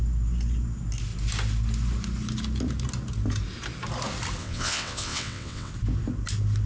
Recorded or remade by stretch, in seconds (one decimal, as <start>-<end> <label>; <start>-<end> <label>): 0.0-4.4 recorded; 4.4-5.7 remade; 5.7-6.7 recorded